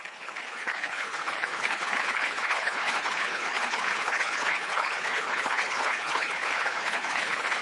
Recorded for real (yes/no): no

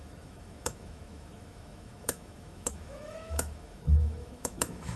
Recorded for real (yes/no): no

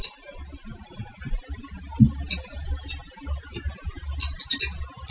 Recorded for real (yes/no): yes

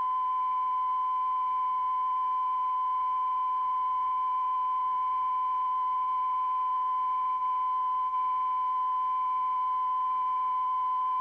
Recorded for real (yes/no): yes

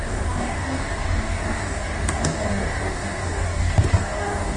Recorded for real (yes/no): no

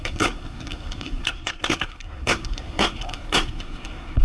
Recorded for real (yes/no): no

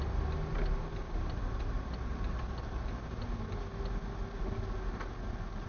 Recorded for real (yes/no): yes